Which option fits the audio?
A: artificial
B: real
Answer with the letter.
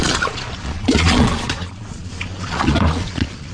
A